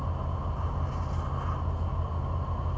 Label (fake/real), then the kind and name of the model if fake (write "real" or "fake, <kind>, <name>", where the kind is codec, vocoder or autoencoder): real